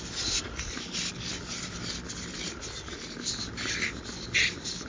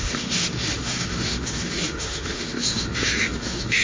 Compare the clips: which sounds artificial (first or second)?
second